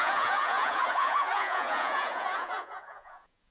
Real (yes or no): no